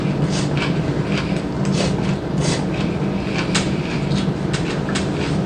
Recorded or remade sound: recorded